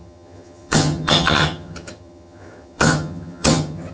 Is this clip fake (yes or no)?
yes